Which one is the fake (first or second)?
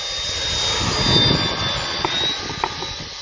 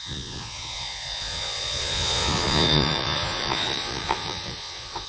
second